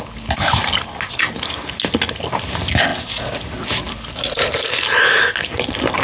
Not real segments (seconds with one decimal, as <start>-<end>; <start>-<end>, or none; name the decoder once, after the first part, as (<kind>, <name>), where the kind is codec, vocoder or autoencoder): none